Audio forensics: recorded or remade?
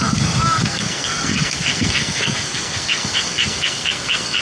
remade